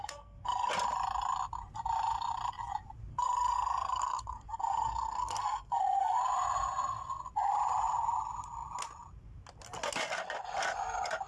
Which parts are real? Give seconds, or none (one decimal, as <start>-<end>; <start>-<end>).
0.7-3.1; 6.2-11.3